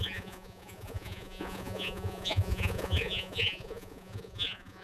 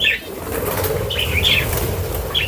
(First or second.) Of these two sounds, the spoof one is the first